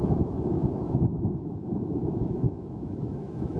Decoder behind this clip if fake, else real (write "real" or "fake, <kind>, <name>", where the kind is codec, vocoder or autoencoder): fake, autoencoder, DAC-VAE